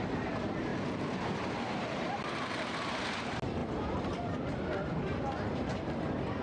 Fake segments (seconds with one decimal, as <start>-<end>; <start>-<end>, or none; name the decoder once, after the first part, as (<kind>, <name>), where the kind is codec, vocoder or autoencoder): none